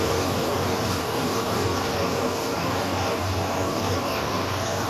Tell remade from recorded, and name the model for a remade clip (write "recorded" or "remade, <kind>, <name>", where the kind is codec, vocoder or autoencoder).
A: remade, codec, DAC